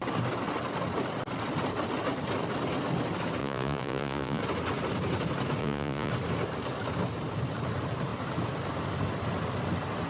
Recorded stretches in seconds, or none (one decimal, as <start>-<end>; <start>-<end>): 0.0-3.4; 4.4-5.6; 6.1-10.1